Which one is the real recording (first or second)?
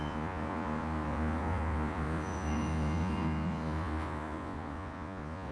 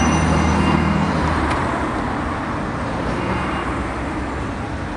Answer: second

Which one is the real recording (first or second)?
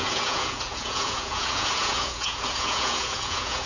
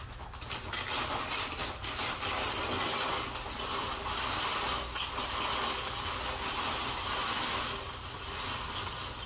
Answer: second